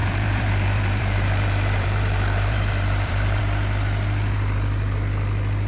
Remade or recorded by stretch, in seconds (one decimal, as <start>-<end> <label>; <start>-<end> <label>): 0.0-3.4 remade; 3.4-5.7 recorded